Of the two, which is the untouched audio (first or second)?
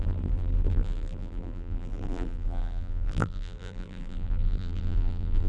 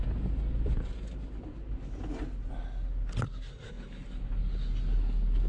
second